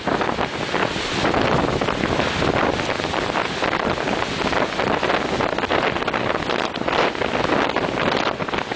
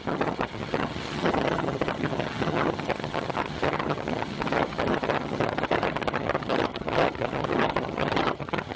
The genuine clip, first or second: first